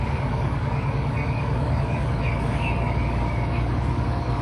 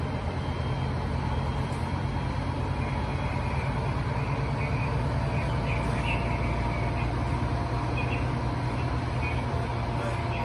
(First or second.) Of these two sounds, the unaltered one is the second